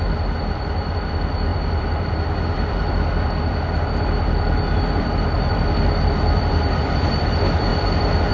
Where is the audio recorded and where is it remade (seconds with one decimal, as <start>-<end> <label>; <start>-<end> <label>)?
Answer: 0.0-7.7 remade; 7.7-8.3 recorded